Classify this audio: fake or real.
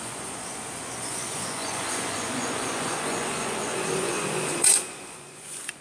fake